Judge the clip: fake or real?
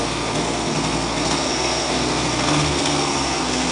fake